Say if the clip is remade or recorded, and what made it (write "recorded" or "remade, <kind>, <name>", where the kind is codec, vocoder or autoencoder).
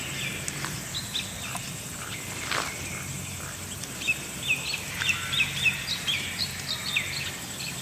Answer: recorded